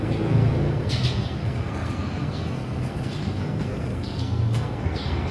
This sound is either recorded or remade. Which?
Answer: remade